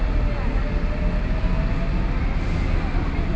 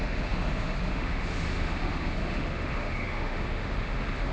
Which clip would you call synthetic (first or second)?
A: second